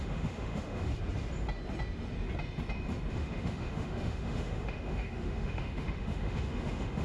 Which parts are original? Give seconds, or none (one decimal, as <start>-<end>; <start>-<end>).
0.9-3.1